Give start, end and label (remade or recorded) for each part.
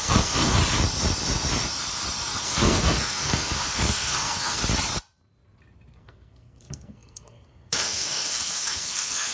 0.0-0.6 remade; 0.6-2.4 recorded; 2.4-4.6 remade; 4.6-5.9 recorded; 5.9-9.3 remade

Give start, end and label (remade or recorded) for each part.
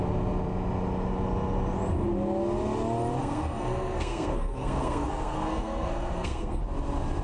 0.0-3.2 recorded; 3.2-6.6 remade; 6.6-7.2 recorded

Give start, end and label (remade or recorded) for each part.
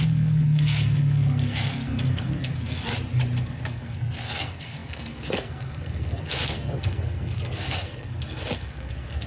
0.0-2.9 remade; 2.9-3.5 recorded; 3.5-9.3 remade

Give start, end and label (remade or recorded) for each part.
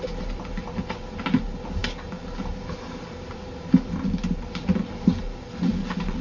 0.0-6.2 recorded